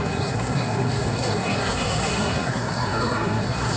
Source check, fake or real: fake